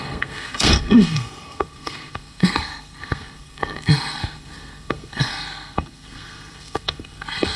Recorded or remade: remade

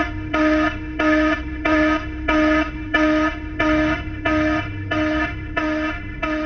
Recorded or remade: remade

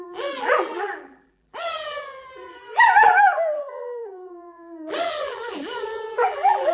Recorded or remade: remade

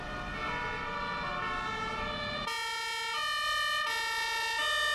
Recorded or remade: recorded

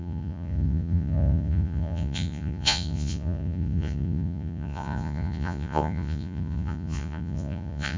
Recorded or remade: remade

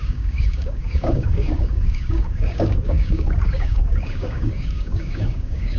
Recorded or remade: remade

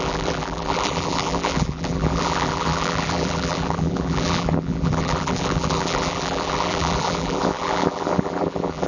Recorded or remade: remade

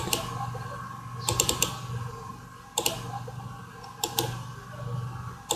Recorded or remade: recorded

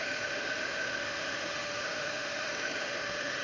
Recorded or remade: remade